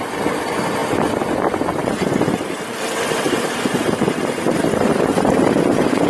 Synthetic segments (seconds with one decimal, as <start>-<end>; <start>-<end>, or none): 0.0-6.1